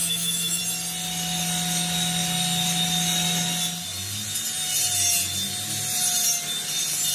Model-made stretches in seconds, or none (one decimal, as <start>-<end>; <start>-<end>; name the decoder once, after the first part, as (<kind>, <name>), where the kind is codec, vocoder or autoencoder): 0.0-0.6 (autoencoder, DAC-VAE)